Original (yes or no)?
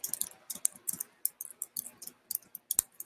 yes